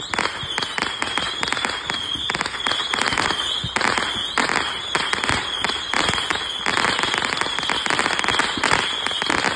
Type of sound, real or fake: real